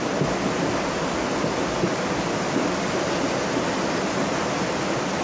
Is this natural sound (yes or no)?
yes